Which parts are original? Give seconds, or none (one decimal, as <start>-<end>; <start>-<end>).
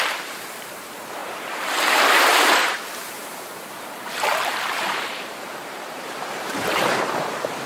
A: none